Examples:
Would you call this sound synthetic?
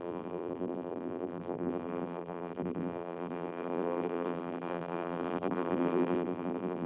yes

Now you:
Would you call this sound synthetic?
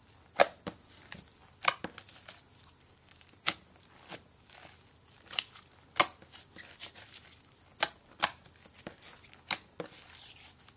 no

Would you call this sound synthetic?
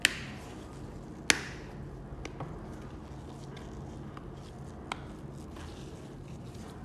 no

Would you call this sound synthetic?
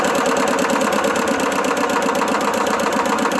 no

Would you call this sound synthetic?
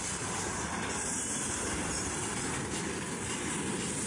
no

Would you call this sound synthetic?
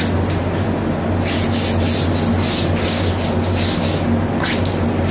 no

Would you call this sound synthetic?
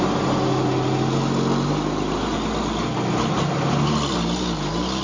no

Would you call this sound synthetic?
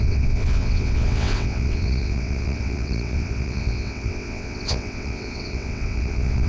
yes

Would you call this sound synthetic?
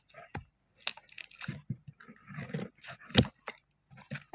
no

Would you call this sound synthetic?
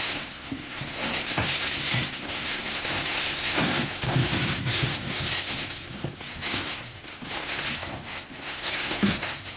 yes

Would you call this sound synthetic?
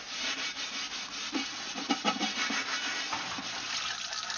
no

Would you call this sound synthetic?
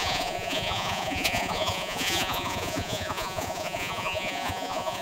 yes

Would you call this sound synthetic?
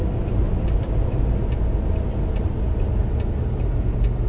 no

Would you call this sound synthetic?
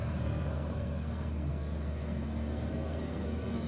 yes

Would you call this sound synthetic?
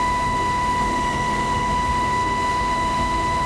yes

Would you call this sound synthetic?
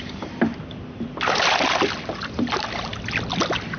no